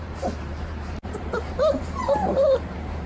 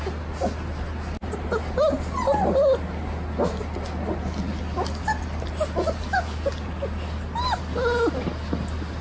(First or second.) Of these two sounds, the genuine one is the second